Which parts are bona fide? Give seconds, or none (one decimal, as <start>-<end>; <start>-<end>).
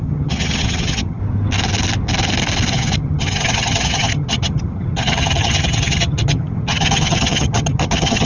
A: 1.2-2.7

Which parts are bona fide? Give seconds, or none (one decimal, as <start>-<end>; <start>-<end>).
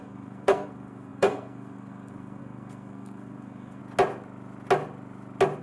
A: 3.8-5.6